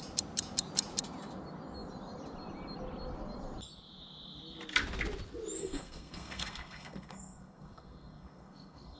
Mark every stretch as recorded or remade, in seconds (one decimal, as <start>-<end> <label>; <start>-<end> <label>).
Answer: 0.0-5.6 recorded; 5.6-9.0 remade